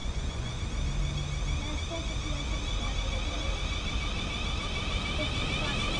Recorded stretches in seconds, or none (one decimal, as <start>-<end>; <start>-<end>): 0.6-6.0